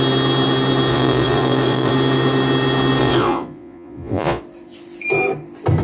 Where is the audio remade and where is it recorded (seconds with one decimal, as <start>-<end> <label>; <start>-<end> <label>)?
0.0-0.9 recorded; 0.9-1.9 remade; 1.9-3.0 recorded; 3.0-4.4 remade; 4.4-5.8 recorded